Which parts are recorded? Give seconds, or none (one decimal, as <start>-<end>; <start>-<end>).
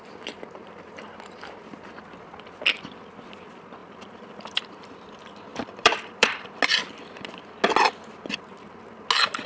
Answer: 0.0-3.8; 5.1-5.5; 6.5-9.5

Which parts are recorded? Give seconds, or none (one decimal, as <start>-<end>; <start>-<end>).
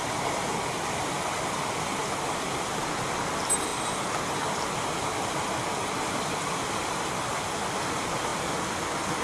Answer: 0.0-9.2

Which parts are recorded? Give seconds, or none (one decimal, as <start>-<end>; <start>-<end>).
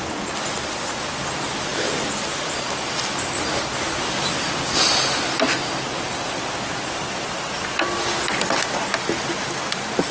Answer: 0.0-10.1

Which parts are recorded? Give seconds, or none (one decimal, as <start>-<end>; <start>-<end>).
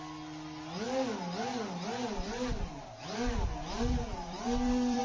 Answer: 0.0-4.1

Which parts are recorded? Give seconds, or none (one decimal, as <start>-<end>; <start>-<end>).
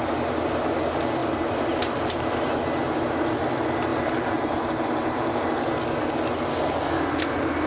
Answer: 0.0-1.2; 2.6-3.9; 5.5-7.7